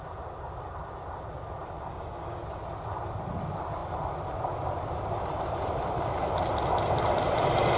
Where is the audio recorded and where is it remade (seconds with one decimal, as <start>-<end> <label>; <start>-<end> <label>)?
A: 0.0-1.9 recorded; 1.9-2.4 remade; 2.4-7.8 recorded